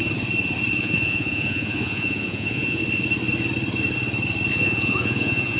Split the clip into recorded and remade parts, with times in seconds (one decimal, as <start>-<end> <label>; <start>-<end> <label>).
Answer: 0.0-0.8 recorded; 0.8-2.8 remade; 2.8-4.5 recorded; 4.5-5.6 remade